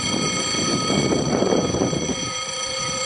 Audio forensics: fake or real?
fake